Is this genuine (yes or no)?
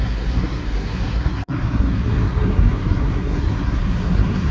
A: no